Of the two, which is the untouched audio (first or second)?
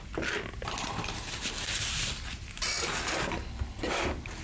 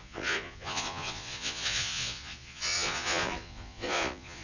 first